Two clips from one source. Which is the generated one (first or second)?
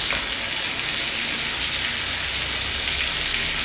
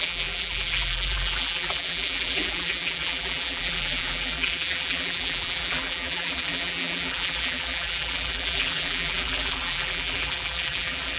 second